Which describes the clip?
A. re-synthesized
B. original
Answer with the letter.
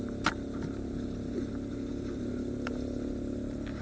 B